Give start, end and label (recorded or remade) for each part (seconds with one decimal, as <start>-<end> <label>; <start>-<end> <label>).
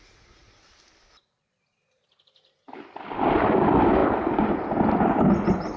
0.0-0.4 recorded; 0.4-3.3 remade; 3.3-4.0 recorded; 4.0-5.8 remade